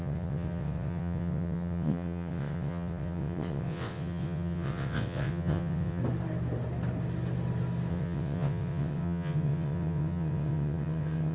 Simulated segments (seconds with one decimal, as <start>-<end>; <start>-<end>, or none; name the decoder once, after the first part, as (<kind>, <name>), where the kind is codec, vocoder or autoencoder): 0.0-6.0 (vocoder, WaveNeXt); 7.9-11.3